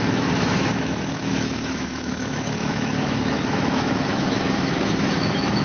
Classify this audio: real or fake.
fake